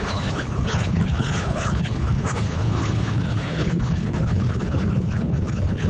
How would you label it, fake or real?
fake